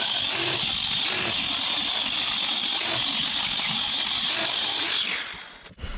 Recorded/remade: recorded